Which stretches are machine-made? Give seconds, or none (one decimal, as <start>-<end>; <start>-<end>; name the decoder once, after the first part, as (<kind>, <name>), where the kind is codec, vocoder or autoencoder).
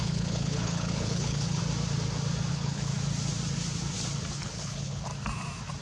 0.0-1.6 (codec, HILCodec); 2.5-2.9; 4.3-5.1